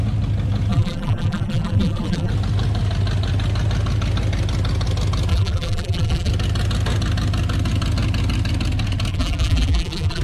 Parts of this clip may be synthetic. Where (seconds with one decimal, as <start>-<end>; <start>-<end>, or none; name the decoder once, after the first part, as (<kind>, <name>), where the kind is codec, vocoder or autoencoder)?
0.7-2.3 (vocoder, BigVGAN v2); 5.3-6.3; 9.1-10.2